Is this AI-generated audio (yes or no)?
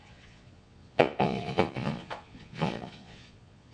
yes